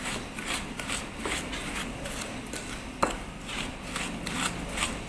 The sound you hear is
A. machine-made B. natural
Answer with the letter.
B